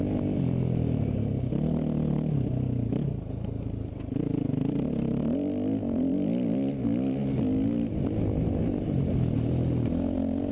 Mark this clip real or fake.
real